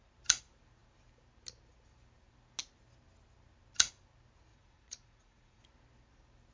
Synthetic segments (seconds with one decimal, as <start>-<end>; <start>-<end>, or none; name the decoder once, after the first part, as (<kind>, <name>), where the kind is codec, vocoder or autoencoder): 4.5-5.6 (vocoder, Vocos)